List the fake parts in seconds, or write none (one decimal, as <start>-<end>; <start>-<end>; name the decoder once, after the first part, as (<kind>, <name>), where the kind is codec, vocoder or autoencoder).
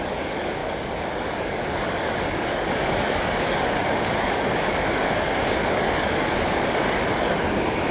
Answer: 0.0-7.9 (codec, DAC)